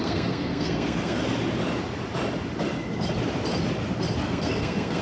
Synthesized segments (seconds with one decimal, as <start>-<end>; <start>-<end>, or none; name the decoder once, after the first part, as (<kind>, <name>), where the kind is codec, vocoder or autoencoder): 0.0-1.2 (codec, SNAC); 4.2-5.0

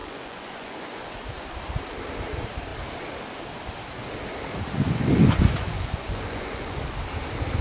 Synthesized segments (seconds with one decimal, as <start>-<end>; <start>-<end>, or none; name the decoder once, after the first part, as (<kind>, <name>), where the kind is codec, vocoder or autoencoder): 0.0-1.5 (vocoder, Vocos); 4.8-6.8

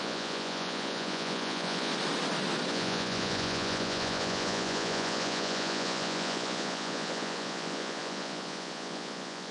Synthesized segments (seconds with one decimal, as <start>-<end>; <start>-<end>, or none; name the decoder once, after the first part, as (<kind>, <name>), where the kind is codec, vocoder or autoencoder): 0.0-1.9 (vocoder, Vocos); 2.7-9.5

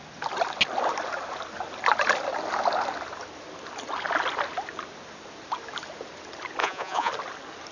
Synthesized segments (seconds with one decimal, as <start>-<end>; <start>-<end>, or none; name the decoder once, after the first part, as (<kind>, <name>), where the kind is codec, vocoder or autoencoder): 6.6-7.1 (vocoder, Vocos)

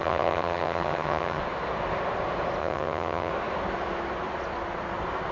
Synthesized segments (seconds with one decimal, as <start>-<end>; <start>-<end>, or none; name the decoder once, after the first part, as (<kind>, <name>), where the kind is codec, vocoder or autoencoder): 0.0-1.4 (vocoder, HiFi-GAN); 2.6-3.3